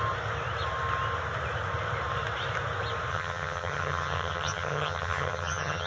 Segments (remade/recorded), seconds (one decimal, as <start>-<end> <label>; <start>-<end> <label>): 0.0-3.1 recorded; 3.1-5.9 remade